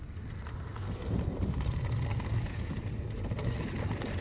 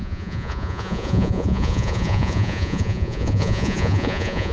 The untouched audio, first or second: first